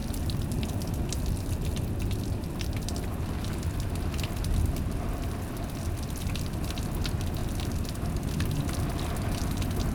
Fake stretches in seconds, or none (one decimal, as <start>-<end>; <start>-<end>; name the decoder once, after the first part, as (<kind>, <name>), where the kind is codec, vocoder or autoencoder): 0.0-0.6 (vocoder, BigVGAN v2); 7.4-8.5